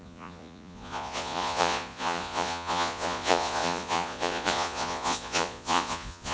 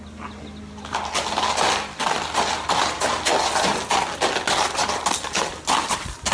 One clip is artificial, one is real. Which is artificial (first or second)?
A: first